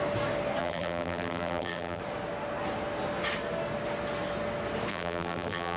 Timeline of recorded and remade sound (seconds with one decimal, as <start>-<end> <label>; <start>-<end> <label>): 0.0-0.6 recorded; 0.6-2.0 remade; 2.0-4.9 recorded; 4.9-5.8 remade